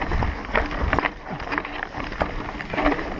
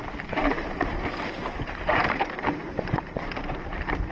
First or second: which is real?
first